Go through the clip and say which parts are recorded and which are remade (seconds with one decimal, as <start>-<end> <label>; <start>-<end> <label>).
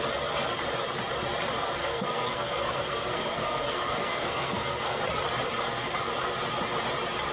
0.0-1.8 recorded; 1.8-5.0 remade; 5.0-7.3 recorded